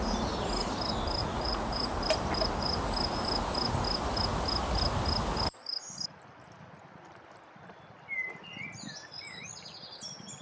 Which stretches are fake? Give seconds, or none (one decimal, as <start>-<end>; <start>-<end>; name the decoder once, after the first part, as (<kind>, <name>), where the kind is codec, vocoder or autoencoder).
1.2-1.9 (vocoder, Vocos)